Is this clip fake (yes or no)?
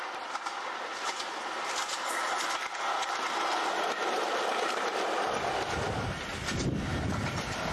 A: no